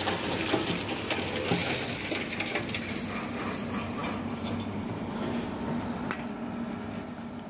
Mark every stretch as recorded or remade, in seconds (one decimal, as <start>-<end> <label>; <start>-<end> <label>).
0.0-7.5 recorded